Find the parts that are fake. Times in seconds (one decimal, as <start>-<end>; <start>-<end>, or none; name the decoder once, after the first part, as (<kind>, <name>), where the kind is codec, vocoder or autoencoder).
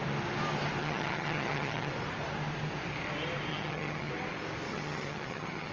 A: 0.8-1.9 (vocoder, HiFi-GAN); 3.5-4.1; 4.7-5.7